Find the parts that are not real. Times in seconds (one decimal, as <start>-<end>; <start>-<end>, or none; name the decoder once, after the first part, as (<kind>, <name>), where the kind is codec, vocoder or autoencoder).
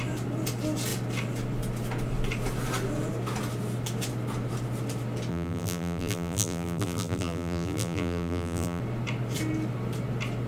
5.3-8.8 (vocoder, BigVGAN v2)